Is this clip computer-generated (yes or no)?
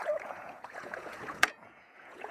yes